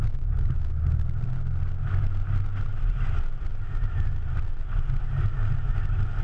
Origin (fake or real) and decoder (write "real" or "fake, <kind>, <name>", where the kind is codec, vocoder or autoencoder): real